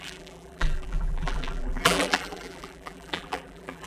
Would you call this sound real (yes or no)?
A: no